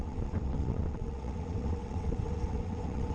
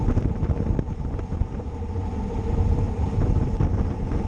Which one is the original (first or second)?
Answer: second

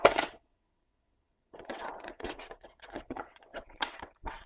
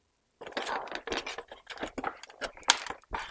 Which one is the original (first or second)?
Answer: second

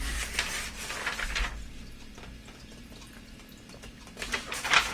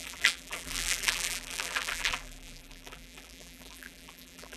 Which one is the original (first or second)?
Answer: first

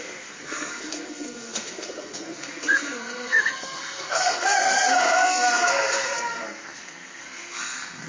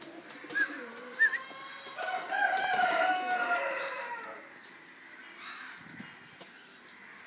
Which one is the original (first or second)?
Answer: second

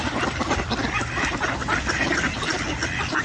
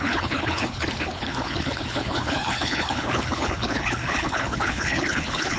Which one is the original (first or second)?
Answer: first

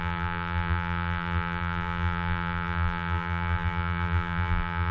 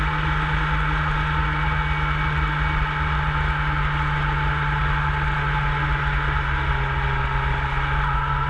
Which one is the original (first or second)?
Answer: second